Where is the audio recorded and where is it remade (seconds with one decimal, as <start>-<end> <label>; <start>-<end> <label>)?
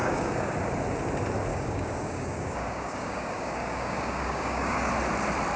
0.0-0.5 remade; 0.5-1.5 recorded; 1.5-4.9 remade; 4.9-5.6 recorded